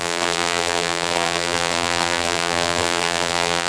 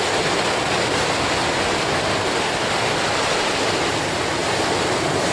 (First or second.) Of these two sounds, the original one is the second